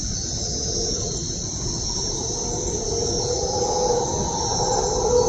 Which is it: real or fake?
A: real